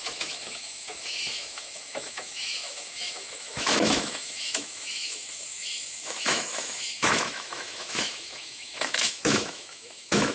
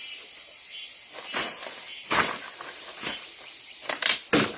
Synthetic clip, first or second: first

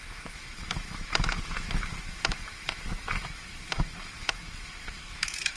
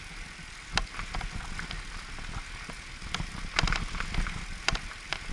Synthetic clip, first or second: first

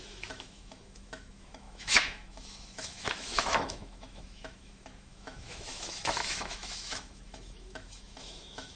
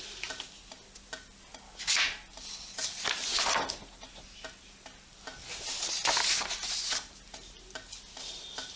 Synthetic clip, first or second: first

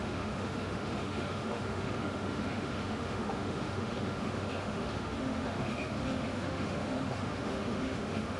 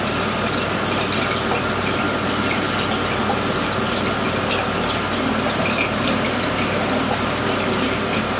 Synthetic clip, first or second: first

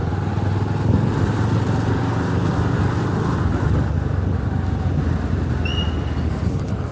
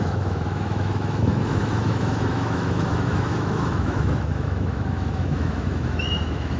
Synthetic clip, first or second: second